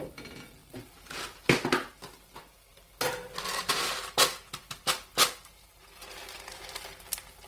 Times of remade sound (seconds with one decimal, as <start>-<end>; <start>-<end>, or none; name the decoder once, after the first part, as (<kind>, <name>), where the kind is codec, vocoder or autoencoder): none